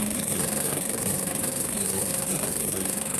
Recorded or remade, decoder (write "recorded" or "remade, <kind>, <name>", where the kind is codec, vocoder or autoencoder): remade, codec, SNAC